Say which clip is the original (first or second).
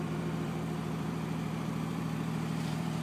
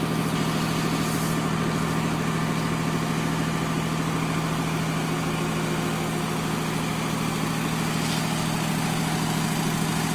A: second